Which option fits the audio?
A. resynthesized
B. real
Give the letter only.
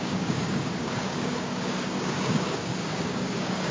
A